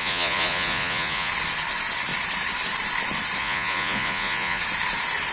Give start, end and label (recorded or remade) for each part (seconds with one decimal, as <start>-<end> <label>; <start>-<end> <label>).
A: 0.0-1.3 remade; 1.3-3.4 recorded; 3.4-4.6 remade; 4.6-5.3 recorded